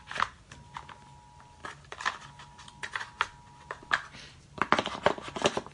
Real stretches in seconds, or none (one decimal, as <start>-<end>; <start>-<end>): 0.0-5.7